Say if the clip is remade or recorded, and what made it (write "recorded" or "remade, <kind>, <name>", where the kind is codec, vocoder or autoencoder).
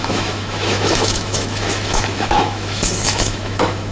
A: remade, autoencoder, DAC-VAE